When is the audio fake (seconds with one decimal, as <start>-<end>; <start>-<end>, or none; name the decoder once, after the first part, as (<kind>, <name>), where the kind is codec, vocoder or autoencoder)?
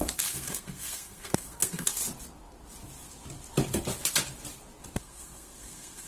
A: 0.0-2.0 (codec, SNAC); 5.0-6.1